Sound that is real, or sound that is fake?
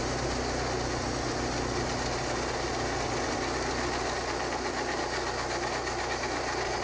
real